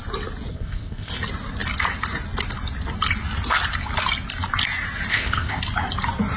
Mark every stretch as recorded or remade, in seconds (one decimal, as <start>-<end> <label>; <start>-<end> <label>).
0.0-0.5 recorded; 0.5-1.1 remade; 1.1-5.1 recorded; 5.1-5.6 remade; 5.6-6.4 recorded